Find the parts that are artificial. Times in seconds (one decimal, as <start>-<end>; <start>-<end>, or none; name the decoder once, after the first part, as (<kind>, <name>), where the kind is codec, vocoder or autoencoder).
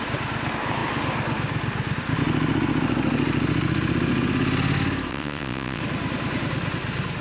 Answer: 5.1-5.8 (vocoder, WaveNeXt)